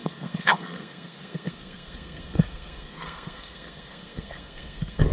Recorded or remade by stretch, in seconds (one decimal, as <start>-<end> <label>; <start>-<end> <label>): 0.0-5.1 remade